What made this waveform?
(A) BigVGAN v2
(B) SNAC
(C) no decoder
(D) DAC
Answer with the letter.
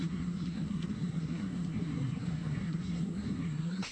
B